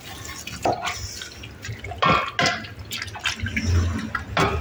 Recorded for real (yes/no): yes